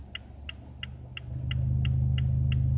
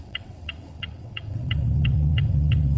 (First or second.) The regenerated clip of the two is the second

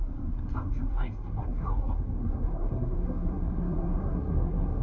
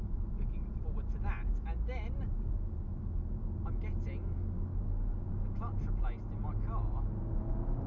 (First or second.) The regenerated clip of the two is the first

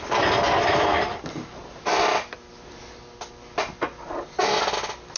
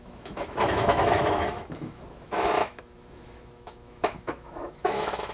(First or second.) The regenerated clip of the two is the second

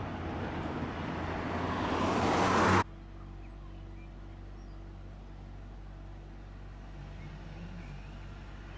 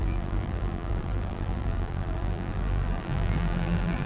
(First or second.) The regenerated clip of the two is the second